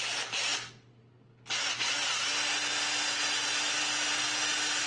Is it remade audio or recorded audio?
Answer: recorded